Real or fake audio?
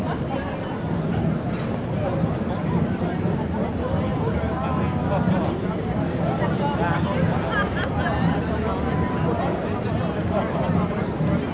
real